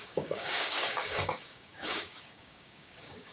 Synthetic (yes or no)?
yes